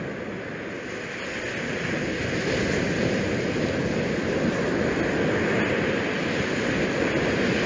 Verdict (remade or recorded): recorded